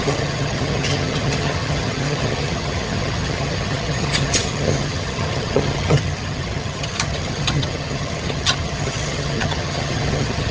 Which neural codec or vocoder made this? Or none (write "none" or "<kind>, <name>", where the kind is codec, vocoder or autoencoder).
vocoder, HiFi-GAN